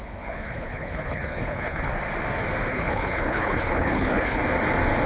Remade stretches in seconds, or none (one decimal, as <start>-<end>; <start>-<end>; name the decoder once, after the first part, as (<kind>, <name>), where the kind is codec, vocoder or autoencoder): 0.0-1.9 (codec, HILCodec); 2.7-4.4